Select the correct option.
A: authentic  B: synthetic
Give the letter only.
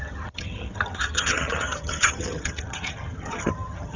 B